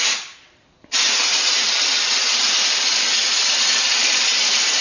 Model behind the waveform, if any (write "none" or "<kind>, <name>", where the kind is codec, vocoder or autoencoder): none